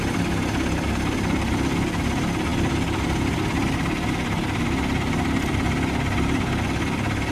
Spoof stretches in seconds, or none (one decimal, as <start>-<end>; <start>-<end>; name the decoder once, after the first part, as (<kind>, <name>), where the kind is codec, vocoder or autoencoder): none